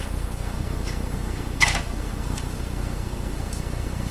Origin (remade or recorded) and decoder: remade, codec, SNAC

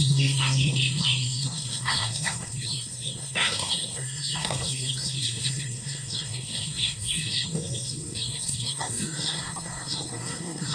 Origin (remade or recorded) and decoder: remade, codec, SNAC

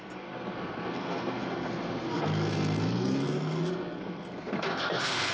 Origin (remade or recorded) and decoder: remade, codec, SNAC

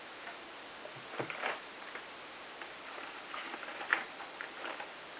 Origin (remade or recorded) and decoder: recorded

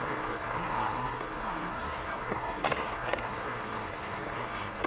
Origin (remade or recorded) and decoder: remade, codec, SNAC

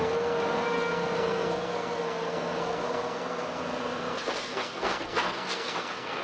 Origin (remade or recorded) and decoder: remade, codec, SNAC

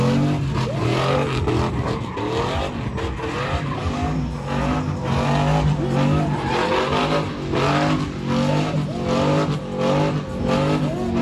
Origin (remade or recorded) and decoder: recorded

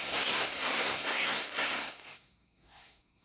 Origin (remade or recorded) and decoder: remade, codec, SNAC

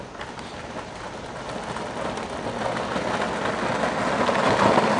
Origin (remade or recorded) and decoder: recorded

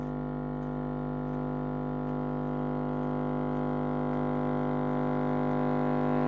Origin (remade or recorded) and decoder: recorded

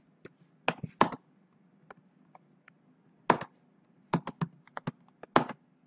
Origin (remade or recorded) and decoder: recorded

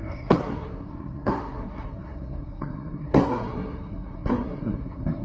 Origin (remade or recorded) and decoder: remade, codec, SNAC